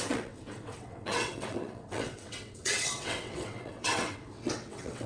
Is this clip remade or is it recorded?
remade